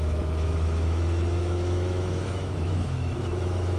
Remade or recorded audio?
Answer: remade